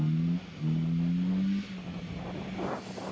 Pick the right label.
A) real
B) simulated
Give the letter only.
A